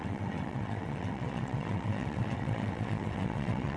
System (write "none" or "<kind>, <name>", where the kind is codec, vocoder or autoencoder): vocoder, WaveNeXt